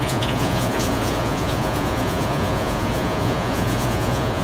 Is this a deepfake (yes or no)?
yes